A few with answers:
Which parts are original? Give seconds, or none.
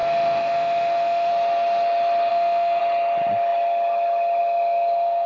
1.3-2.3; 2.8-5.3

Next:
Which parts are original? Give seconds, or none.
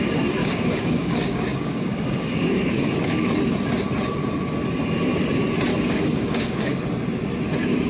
0.0-0.4; 3.4-5.7; 6.8-7.9